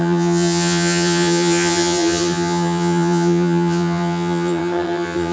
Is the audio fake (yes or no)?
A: yes